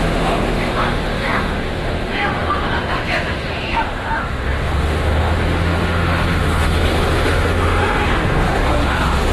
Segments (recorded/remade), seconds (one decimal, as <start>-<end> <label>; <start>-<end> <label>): 0.0-9.3 remade